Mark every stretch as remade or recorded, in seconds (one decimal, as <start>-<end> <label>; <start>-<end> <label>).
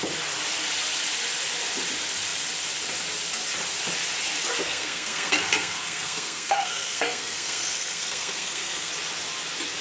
0.0-4.6 recorded; 4.6-8.9 remade; 8.9-9.8 recorded